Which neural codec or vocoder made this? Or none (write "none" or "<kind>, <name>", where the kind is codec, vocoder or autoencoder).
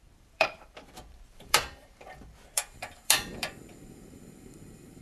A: vocoder, BigVGAN v2